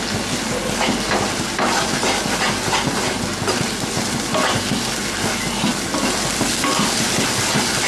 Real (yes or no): yes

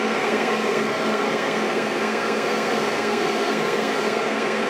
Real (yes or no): no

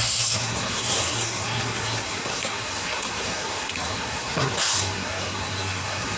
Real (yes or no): no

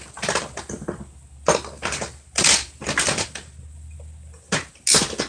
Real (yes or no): yes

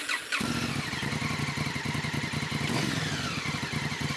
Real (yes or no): yes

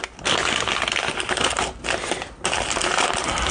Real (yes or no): yes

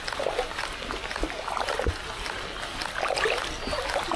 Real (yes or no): yes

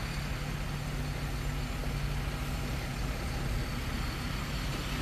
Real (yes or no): yes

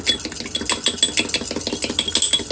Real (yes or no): yes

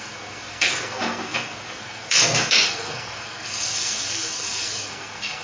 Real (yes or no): no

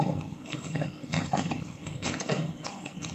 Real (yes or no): no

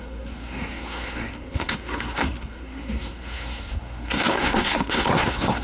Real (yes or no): no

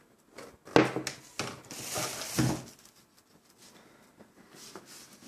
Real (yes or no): yes